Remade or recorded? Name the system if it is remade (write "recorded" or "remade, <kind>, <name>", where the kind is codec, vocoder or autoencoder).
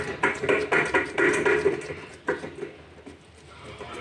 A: recorded